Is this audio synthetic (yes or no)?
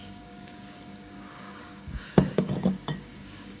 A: yes